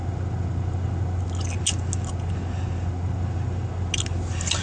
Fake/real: real